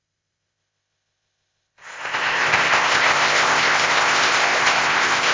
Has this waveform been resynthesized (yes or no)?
yes